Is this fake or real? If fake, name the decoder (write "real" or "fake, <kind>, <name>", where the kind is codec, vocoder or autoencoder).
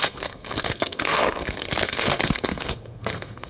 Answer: fake, codec, SNAC